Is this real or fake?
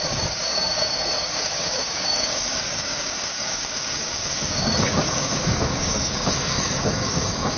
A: fake